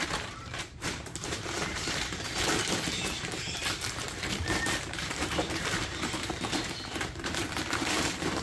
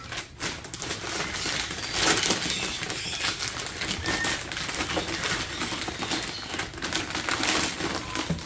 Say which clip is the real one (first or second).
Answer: second